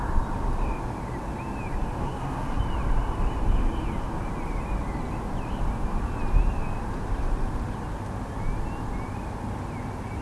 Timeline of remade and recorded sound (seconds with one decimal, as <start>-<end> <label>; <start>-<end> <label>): 0.0-2.0 recorded; 2.0-2.6 remade; 2.6-10.2 recorded